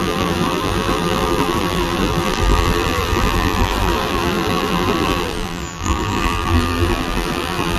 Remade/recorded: remade